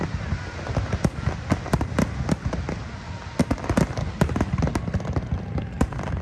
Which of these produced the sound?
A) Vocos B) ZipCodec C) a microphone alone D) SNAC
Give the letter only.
C